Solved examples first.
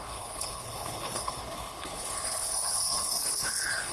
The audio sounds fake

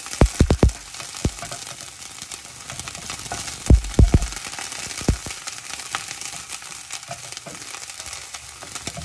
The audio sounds real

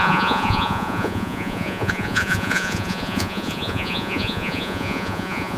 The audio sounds fake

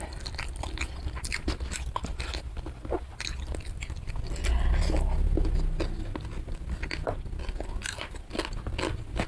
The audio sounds real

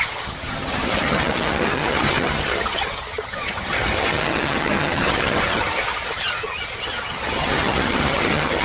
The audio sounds fake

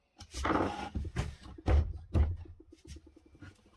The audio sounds real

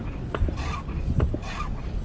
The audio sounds real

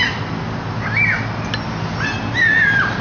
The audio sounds real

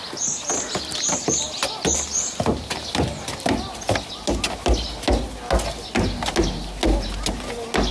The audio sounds real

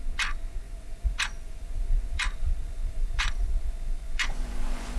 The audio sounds fake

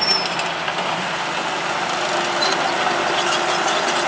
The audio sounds real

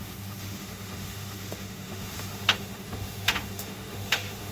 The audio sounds fake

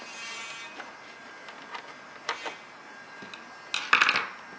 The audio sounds real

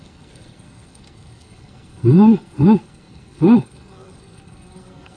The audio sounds fake